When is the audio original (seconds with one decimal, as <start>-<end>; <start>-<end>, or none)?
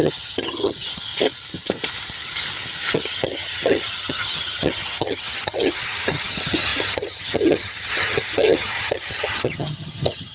1.1-2.9